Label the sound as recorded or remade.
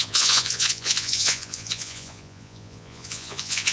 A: remade